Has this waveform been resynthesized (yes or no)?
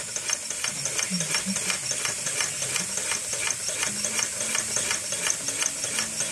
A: no